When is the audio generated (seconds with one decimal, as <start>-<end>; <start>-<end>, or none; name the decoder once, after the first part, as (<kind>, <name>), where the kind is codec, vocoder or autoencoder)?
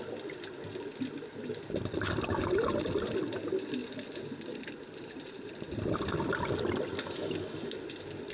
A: 3.8-5.5 (vocoder, BigVGAN v2)